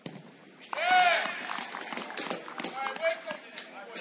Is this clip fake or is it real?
real